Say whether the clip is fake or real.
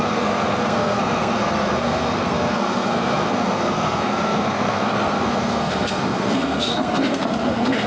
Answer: fake